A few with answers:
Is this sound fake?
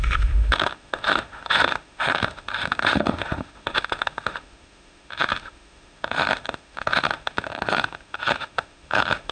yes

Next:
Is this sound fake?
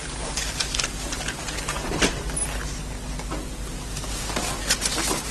no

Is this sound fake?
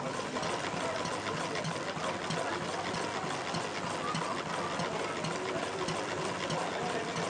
no